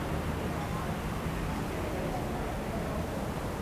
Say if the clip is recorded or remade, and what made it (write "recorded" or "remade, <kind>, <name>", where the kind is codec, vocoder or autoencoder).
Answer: recorded